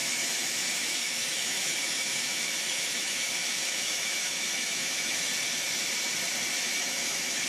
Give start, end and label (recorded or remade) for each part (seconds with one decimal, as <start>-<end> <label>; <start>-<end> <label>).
0.0-5.3 remade; 5.3-6.6 recorded; 6.6-7.5 remade